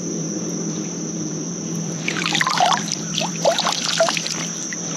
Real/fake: fake